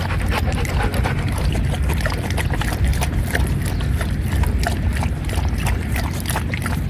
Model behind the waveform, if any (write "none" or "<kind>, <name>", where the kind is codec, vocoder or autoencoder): none